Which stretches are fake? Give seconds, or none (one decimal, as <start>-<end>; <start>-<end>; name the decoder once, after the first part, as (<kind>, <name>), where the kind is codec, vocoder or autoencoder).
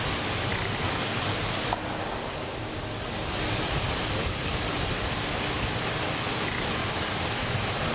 6.8-7.4 (vocoder, BigVGAN v2)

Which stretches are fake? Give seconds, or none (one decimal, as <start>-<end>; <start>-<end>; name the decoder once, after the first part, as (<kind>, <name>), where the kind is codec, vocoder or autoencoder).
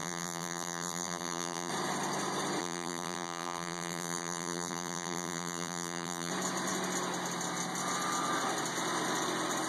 0.0-1.7 (vocoder, BigVGAN v2); 2.6-6.3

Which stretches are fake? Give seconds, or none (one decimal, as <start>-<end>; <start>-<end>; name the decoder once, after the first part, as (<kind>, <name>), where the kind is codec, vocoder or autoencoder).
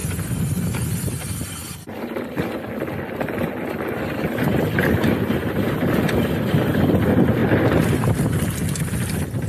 0.0-2.6 (vocoder, BigVGAN v2); 5.4-6.7; 7.4-7.9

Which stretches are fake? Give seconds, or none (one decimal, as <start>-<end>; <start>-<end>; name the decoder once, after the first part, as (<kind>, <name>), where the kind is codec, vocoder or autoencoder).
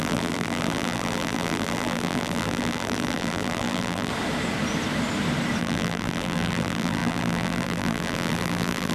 0.0-4.1 (vocoder, BigVGAN v2); 5.6-8.9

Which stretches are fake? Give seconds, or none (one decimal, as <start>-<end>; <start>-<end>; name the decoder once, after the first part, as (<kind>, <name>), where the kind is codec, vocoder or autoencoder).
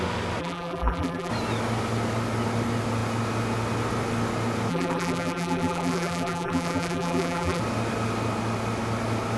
0.4-1.3 (vocoder, BigVGAN v2); 4.7-7.6